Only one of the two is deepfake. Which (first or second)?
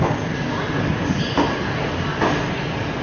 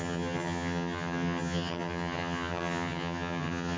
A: second